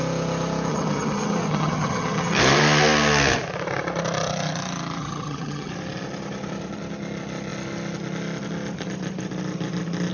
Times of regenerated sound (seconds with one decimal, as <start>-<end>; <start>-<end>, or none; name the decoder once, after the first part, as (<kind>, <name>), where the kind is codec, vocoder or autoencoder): 0.7-2.4 (vocoder, HiFi-GAN); 5.0-5.7